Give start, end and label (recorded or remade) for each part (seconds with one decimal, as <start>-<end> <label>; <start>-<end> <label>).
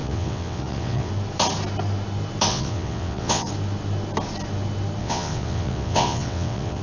0.0-1.1 remade; 1.1-2.5 recorded; 2.5-3.5 remade; 3.5-5.0 recorded; 5.0-6.8 remade